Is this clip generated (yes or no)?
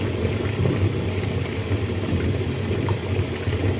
no